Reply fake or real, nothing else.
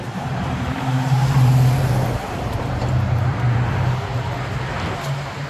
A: fake